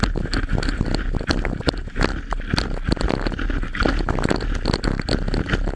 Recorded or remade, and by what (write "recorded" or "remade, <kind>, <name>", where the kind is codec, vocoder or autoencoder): recorded